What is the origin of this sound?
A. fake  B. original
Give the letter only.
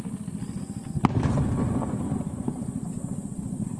B